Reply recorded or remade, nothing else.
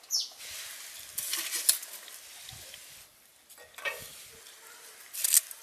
recorded